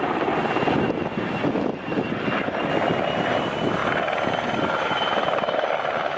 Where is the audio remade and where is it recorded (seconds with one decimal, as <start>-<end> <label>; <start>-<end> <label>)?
0.0-6.2 recorded